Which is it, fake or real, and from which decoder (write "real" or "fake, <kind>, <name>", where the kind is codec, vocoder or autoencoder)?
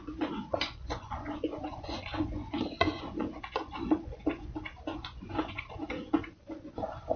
fake, vocoder, Vocos